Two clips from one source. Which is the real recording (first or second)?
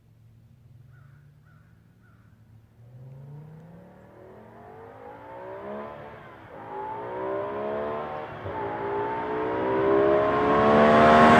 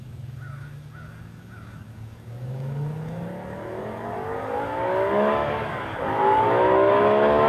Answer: first